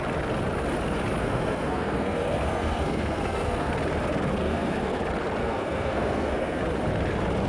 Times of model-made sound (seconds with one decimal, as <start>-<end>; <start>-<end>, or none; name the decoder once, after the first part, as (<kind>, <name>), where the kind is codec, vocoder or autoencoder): 1.2-3.7 (codec, SNAC); 4.4-5.0; 5.4-6.6

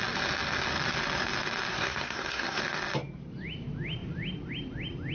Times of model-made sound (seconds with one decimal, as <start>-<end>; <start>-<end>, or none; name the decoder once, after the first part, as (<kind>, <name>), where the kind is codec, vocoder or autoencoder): 1.7-2.6 (codec, SNAC)

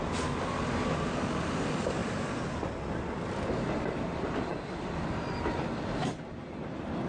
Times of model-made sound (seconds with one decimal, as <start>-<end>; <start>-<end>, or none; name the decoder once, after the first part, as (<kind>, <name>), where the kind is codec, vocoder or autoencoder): 0.0-4.5 (vocoder, BigVGAN v2); 5.6-7.1

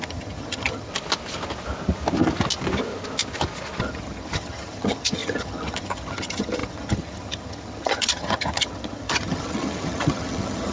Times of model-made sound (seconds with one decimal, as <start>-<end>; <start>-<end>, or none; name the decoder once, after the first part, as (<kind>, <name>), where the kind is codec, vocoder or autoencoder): 0.0-0.9 (vocoder, HiFi-GAN); 3.8-10.7